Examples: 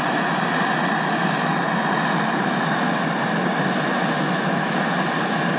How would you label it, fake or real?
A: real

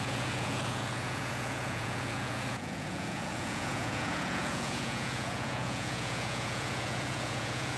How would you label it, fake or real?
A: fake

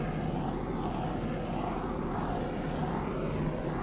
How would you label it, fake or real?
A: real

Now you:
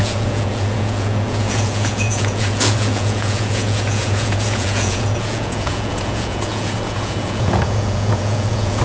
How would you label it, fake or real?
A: fake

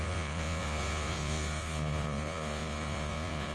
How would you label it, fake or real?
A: fake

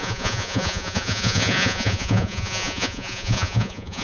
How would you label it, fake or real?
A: fake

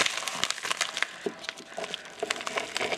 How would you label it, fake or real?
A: real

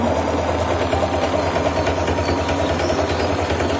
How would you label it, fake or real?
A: real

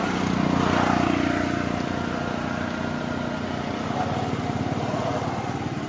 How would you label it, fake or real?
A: real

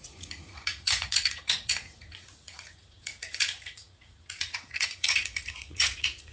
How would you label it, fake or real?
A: fake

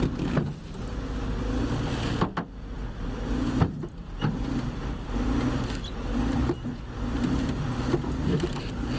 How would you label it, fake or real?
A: real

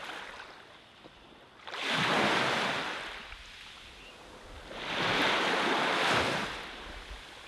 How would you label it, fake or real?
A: real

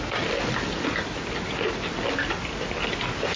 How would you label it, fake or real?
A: real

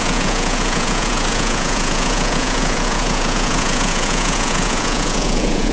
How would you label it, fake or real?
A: fake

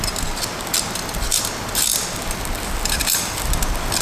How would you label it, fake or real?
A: real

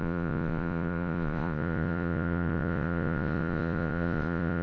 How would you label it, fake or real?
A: fake